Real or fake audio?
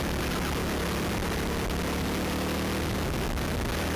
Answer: real